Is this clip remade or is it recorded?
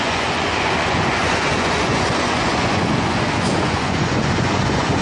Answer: remade